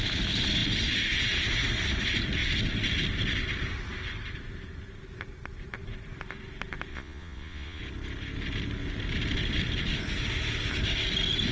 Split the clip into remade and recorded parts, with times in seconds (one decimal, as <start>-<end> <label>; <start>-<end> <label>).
0.0-6.9 recorded; 6.9-7.8 remade; 7.8-11.5 recorded